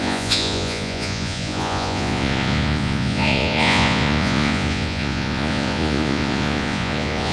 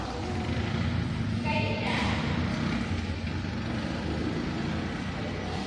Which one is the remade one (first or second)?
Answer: first